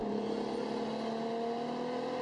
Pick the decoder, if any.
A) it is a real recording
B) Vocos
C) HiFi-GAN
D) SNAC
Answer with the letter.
A